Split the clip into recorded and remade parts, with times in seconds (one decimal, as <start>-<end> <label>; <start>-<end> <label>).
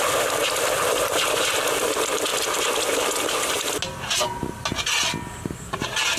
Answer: 0.0-6.2 recorded